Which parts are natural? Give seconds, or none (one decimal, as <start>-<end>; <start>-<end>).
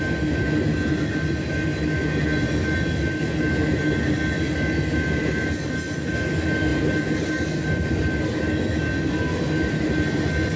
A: 0.0-10.6